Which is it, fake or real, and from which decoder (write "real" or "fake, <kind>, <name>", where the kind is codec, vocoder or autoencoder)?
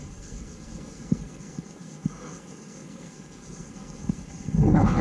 fake, codec, SNAC